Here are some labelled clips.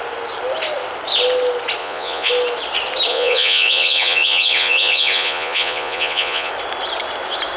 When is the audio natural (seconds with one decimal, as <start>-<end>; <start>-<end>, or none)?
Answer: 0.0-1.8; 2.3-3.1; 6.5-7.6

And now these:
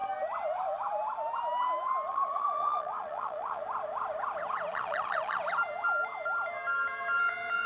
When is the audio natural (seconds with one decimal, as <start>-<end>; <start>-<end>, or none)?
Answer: 0.0-2.1; 3.6-4.7; 5.4-7.7

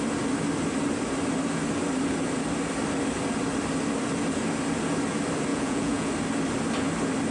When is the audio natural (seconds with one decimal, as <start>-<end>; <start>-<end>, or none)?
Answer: 0.0-5.5; 6.1-7.3

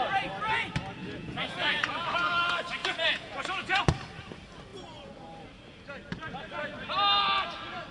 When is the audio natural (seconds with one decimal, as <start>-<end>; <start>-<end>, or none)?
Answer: 0.0-1.0; 2.3-2.8; 3.8-7.9